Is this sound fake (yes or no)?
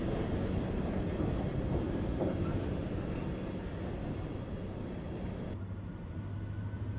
no